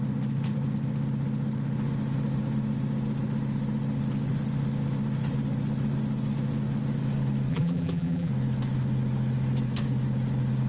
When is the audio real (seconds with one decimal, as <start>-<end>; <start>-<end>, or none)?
0.0-7.5; 8.3-10.7